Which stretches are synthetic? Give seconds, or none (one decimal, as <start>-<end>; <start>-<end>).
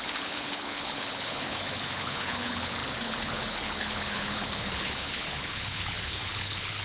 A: 0.0-6.8